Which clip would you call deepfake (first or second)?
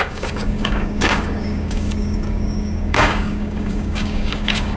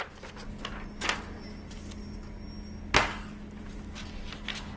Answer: first